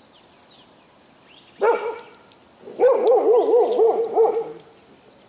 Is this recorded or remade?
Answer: recorded